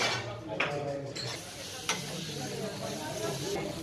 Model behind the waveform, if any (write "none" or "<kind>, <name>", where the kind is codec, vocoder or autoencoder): none